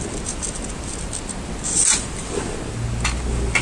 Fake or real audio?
real